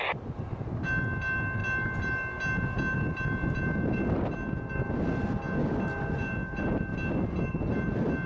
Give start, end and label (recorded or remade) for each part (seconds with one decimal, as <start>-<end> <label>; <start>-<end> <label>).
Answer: 0.0-8.3 recorded